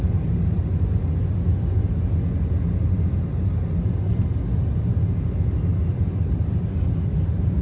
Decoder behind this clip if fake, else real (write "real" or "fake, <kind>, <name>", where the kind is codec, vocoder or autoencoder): real